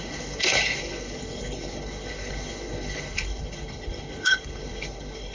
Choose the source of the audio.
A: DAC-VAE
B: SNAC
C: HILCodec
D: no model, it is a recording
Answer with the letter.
C